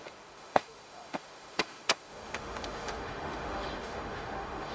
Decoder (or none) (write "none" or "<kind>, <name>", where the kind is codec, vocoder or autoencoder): autoencoder, DAC-VAE